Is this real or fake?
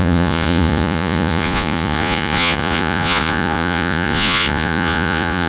fake